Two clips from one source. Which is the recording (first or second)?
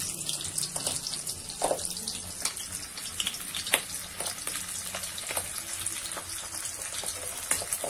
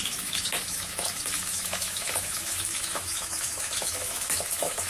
first